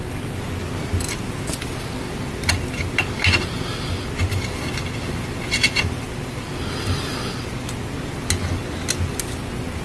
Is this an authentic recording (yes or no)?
yes